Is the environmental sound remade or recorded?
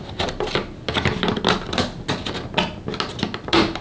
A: recorded